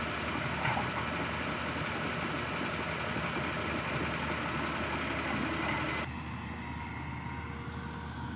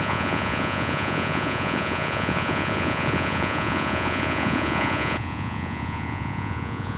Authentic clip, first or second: first